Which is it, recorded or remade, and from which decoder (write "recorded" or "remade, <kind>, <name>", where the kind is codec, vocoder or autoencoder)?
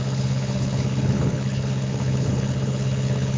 remade, codec, HILCodec